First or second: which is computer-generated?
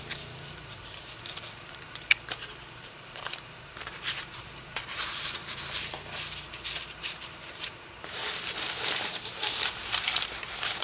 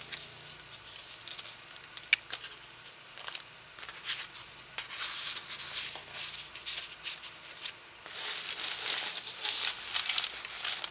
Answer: first